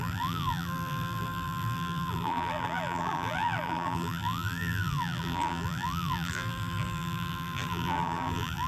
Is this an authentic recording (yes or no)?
no